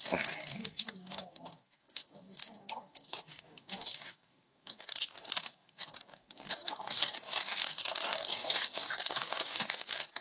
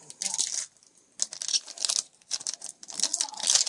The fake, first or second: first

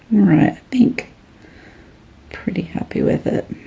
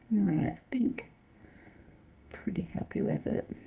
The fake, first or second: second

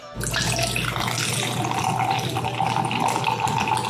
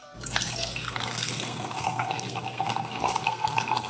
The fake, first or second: second